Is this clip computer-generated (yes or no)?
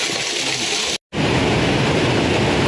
no